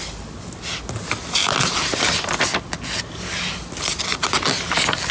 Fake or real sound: real